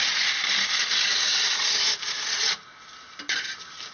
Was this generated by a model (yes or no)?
no